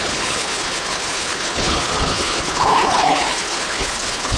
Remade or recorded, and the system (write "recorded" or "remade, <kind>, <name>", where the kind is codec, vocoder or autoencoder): remade, codec, HILCodec